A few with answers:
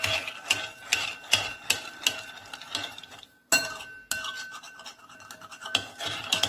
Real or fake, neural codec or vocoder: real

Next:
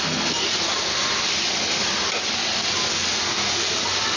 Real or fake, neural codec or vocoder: real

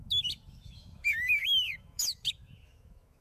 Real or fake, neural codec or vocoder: fake, autoencoder, DAC-VAE